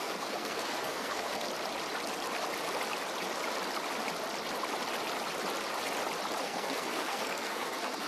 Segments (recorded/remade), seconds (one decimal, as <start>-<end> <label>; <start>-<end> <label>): 0.0-1.5 remade; 1.5-6.4 recorded; 6.4-8.1 remade